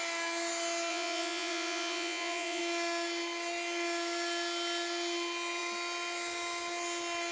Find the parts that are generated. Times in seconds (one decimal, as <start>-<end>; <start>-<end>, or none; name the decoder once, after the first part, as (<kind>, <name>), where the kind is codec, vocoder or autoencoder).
0.9-2.6 (vocoder, Vocos)